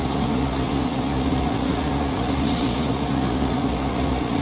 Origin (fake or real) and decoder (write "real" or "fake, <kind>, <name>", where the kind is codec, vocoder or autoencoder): fake, vocoder, Vocos